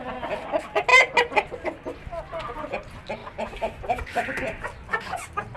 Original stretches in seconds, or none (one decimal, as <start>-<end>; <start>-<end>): 0.0-5.6